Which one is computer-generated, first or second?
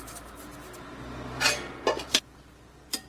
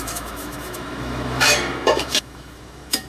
second